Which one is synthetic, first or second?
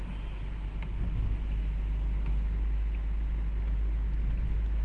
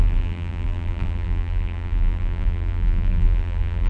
second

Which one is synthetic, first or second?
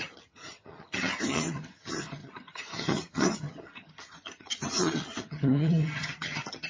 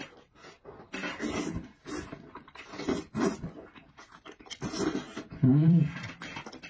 first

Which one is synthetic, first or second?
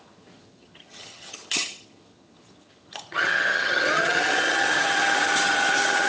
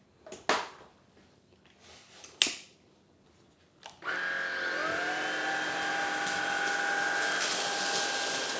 first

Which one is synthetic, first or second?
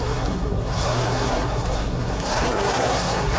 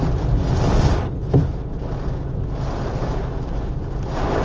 first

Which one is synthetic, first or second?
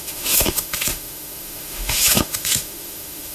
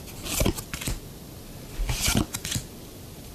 first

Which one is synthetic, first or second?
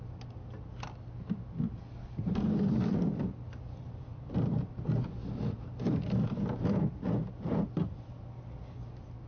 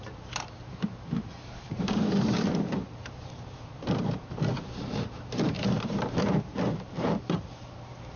second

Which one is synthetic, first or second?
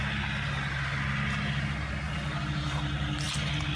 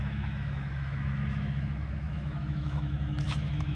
second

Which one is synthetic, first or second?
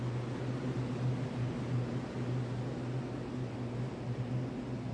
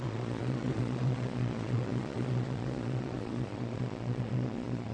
second